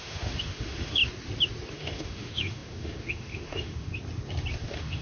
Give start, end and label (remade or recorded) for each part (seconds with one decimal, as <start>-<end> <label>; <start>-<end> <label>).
0.0-1.0 remade; 1.0-1.7 recorded; 1.7-3.9 remade; 3.9-4.6 recorded; 4.6-5.0 remade